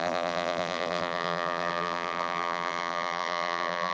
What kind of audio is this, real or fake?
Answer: fake